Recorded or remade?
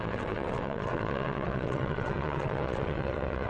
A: remade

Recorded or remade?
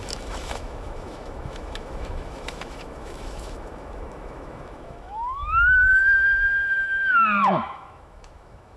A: remade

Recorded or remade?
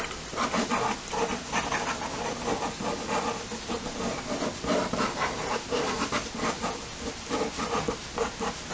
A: recorded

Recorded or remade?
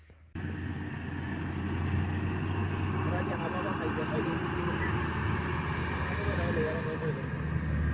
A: recorded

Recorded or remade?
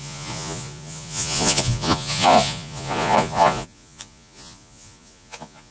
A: remade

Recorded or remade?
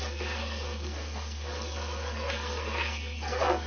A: remade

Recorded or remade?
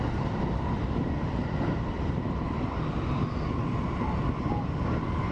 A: recorded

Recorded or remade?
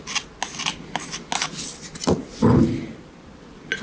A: recorded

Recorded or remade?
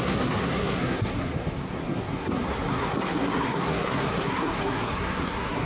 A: remade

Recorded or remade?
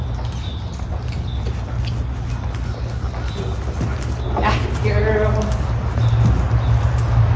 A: recorded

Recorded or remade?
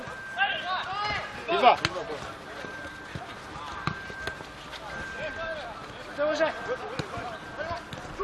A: recorded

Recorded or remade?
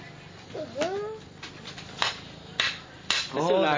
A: recorded